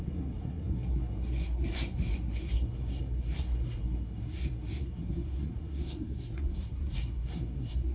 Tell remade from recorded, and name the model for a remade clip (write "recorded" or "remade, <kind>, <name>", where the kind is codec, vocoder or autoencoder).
remade, codec, SNAC